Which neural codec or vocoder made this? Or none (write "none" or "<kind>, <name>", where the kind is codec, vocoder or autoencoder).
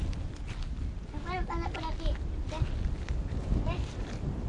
none